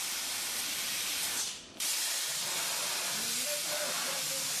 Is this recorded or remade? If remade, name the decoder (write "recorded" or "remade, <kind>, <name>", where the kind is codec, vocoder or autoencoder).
recorded